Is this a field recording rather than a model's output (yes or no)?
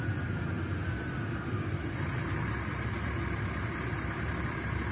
yes